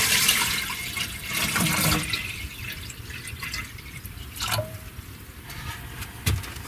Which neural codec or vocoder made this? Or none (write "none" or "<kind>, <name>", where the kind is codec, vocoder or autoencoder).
vocoder, BigVGAN v2